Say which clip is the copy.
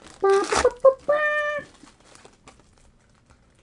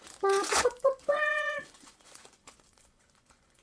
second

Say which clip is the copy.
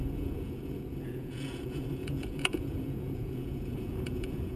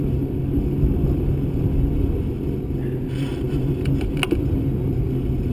first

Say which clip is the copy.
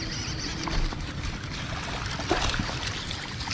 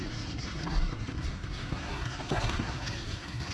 second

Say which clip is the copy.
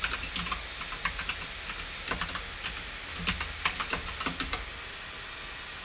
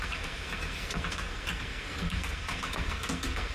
second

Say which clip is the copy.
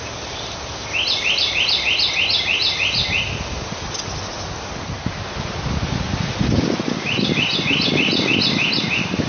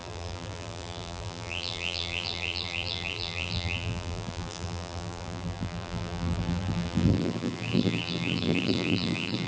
second